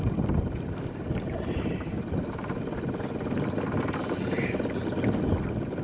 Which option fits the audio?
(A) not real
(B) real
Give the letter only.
B